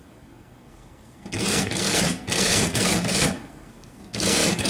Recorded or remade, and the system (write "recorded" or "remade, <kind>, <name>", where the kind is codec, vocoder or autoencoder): remade, codec, SNAC